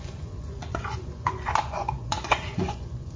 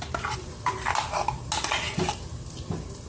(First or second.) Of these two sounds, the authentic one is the second